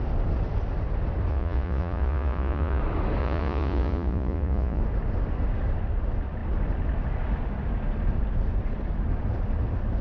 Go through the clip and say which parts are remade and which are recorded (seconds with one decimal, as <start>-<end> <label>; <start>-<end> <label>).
0.0-1.3 recorded; 1.3-2.8 remade; 2.8-3.2 recorded; 3.2-4.8 remade; 4.8-10.0 recorded